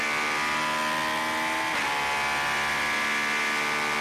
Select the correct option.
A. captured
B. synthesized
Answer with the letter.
A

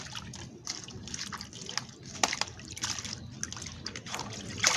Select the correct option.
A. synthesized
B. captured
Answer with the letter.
B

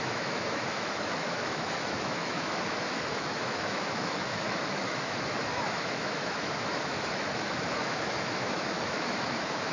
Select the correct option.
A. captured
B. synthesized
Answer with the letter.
B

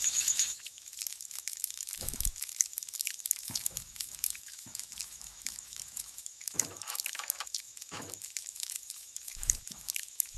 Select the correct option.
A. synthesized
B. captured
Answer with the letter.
A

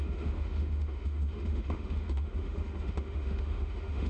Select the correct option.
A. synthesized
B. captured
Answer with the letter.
A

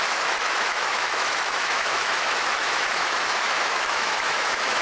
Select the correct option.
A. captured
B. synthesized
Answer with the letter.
B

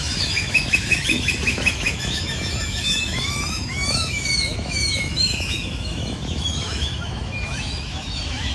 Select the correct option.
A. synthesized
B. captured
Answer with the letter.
A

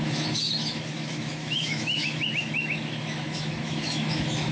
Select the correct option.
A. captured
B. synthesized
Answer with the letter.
B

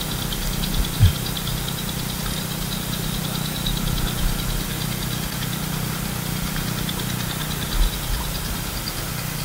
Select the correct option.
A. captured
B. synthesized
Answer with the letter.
A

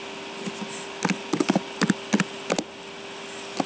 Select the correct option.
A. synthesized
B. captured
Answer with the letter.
B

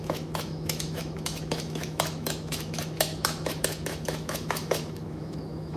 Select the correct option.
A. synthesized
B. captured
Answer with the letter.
A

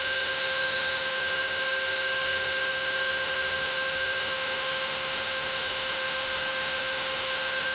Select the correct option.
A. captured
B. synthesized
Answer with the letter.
B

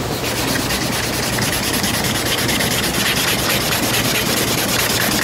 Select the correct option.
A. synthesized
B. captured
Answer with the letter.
B